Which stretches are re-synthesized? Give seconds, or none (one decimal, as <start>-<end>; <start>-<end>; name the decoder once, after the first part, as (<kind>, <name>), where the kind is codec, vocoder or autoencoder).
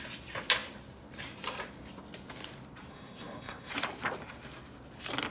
2.9-3.7 (codec, SNAC)